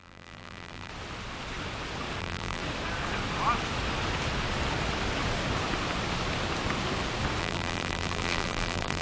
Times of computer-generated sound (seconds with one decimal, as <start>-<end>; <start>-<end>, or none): 0.0-0.9; 2.2-2.6; 7.4-9.0